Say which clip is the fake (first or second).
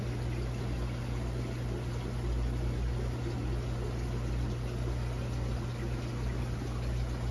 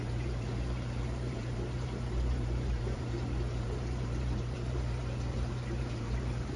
second